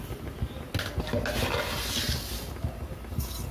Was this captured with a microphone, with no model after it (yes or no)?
yes